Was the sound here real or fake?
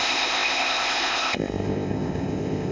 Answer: fake